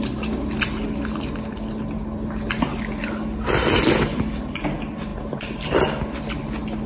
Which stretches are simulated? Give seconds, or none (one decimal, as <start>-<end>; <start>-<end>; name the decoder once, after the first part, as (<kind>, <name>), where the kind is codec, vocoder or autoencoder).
none